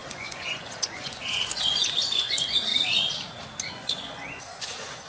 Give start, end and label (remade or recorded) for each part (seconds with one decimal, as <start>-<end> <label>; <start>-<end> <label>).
0.0-2.7 remade; 2.7-3.7 recorded; 3.7-5.1 remade